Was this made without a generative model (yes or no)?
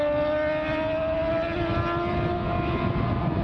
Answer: yes